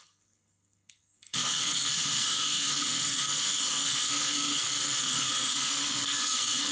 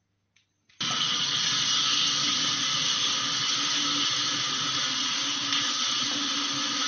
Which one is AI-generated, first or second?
first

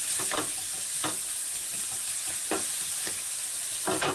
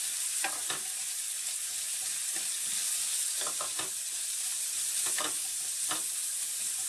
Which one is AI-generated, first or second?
second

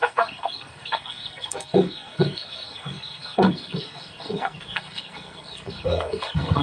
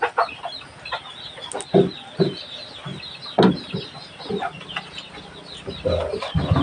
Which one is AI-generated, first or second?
first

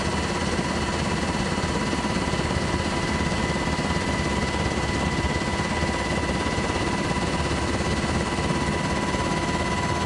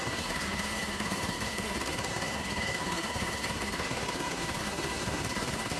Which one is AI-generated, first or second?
second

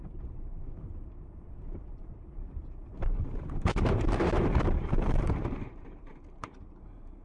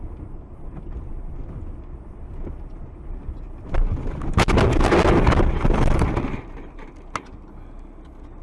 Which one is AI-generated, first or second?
first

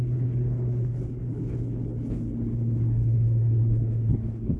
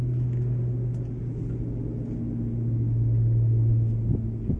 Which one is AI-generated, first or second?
first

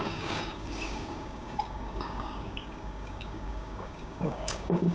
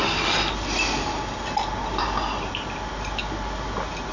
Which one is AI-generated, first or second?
first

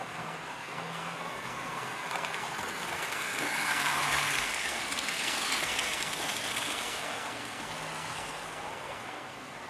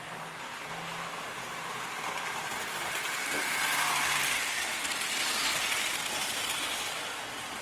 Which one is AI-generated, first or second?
first